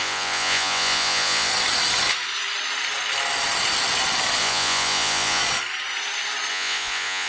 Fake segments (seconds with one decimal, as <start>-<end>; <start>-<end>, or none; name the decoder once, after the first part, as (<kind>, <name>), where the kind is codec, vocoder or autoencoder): 0.0-1.5 (vocoder, Vocos); 4.4-5.4; 6.5-7.3